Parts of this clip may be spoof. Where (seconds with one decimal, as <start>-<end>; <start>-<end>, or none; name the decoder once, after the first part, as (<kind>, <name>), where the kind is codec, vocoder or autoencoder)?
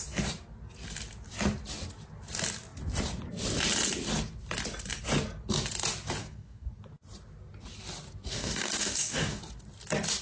6.2-6.7 (codec, DAC); 8.3-9.4